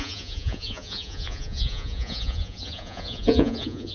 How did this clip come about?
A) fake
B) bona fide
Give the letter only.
A